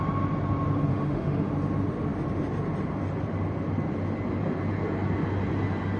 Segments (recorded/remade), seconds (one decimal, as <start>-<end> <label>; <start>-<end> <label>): 0.0-0.9 recorded; 0.9-1.5 remade; 1.5-6.0 recorded